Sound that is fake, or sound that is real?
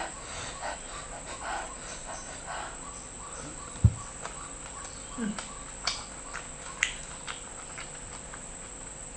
real